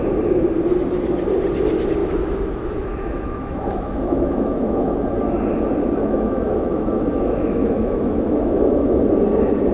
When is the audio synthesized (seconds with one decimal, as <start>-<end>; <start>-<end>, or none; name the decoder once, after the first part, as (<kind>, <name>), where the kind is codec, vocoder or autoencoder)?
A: 2.0-4.9 (autoencoder, DAC-VAE); 6.0-9.0

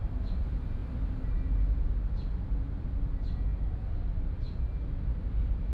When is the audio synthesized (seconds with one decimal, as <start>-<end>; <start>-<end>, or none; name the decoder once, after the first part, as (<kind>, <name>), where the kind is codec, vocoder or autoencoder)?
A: none

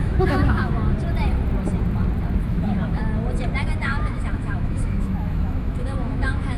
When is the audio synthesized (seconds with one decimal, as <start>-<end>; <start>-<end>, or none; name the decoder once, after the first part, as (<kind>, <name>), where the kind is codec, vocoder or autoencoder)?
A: 0.0-0.8 (autoencoder, DAC-VAE); 2.4-3.0; 3.8-6.6

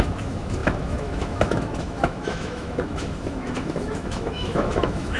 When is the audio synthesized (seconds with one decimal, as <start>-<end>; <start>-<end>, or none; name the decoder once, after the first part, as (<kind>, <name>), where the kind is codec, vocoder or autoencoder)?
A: 0.0-5.2 (autoencoder, DAC-VAE)

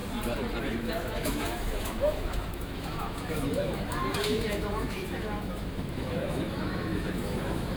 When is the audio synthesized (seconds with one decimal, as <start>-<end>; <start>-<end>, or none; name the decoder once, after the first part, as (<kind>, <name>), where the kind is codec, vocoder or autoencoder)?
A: 0.6-7.8 (autoencoder, DAC-VAE)

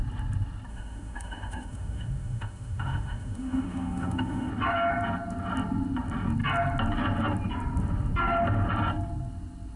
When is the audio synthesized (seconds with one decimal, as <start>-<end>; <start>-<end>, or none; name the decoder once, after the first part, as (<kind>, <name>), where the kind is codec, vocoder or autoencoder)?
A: 0.7-4.5 (autoencoder, DAC-VAE)

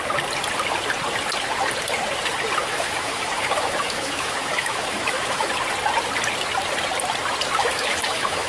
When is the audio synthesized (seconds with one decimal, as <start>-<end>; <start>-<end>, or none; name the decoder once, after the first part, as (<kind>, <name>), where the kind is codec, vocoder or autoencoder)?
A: 2.6-5.5 (autoencoder, DAC-VAE); 7.6-8.5